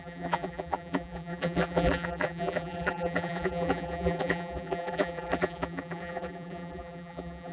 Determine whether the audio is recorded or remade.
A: remade